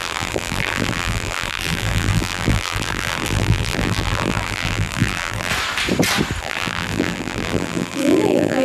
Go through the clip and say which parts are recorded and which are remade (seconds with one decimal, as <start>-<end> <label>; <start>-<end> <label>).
0.0-5.5 remade; 5.5-6.4 recorded; 6.4-8.6 remade